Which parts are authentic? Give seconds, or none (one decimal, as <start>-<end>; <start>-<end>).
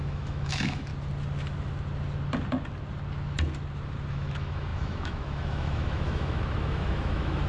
0.9-4.1